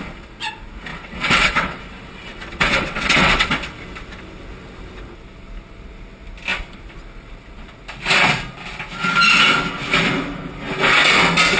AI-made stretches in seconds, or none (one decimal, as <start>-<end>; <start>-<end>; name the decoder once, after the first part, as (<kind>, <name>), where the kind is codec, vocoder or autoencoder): 0.9-1.8 (vocoder, WaveNeXt); 2.3-3.5